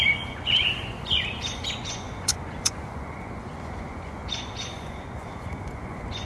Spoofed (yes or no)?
yes